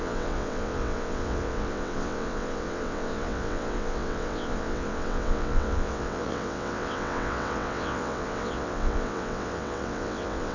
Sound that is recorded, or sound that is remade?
remade